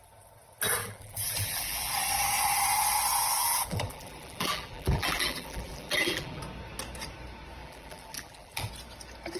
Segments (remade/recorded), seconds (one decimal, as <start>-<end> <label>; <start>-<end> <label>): 0.0-0.8 recorded; 0.8-1.9 remade; 1.9-3.4 recorded; 3.4-6.4 remade; 6.4-7.6 recorded; 7.6-8.7 remade; 8.7-9.4 recorded